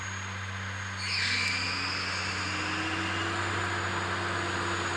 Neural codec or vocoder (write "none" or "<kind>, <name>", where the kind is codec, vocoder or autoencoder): none